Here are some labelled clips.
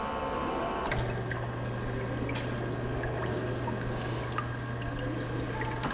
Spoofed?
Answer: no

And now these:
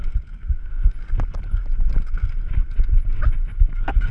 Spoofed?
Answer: no